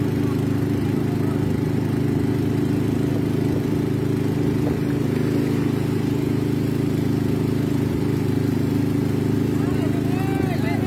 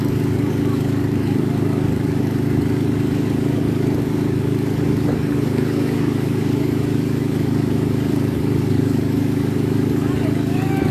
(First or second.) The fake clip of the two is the second